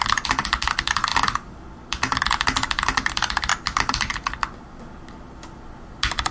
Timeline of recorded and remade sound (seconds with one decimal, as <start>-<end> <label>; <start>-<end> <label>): 0.0-6.3 recorded

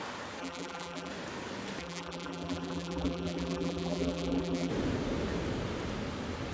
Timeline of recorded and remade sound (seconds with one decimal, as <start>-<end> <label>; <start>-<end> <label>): 0.0-0.4 recorded; 0.4-1.1 remade; 1.1-1.8 recorded; 1.8-4.7 remade; 4.7-6.5 recorded

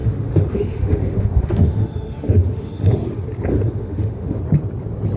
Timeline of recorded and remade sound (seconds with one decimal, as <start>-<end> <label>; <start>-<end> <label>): 0.0-3.1 remade; 3.1-3.5 recorded; 3.5-4.4 remade; 4.4-5.2 recorded

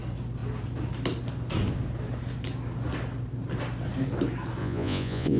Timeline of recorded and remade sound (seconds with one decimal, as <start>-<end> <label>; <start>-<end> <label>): 0.0-4.6 recorded; 4.6-5.4 remade

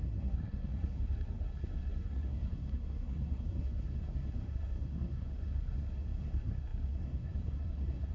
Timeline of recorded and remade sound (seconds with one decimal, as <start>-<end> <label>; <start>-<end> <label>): 0.0-8.1 remade

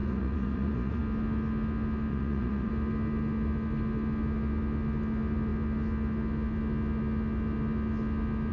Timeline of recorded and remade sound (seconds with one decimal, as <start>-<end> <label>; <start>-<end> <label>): 0.0-1.0 remade; 1.0-2.1 recorded; 2.1-2.7 remade; 2.7-8.5 recorded

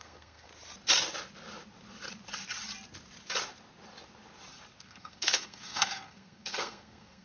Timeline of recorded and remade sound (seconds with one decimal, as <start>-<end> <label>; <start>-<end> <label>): 0.0-0.5 remade; 0.5-4.8 recorded; 4.8-7.2 remade

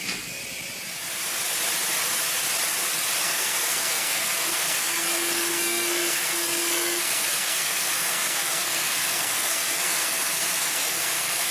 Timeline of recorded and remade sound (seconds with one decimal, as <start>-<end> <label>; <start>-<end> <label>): 0.0-0.4 remade; 0.4-3.2 recorded; 3.2-11.5 remade